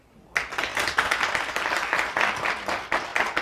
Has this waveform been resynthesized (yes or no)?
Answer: no